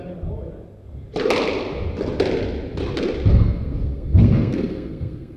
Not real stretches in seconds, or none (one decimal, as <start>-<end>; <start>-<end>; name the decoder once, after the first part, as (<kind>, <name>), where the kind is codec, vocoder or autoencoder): 3.3-5.4 (codec, SNAC)